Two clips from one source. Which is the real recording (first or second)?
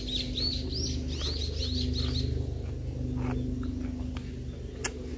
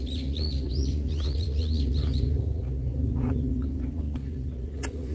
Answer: first